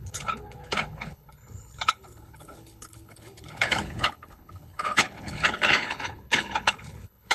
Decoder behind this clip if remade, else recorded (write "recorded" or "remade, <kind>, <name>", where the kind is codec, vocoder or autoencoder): remade, codec, HILCodec